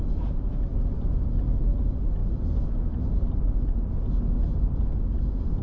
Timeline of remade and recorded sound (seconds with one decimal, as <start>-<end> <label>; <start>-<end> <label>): 0.0-5.6 recorded